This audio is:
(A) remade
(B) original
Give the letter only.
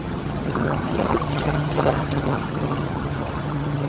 A